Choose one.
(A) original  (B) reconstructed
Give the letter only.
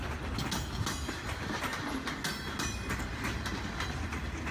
A